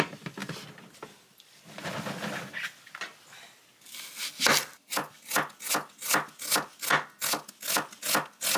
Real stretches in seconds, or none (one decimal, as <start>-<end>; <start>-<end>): 0.0-8.6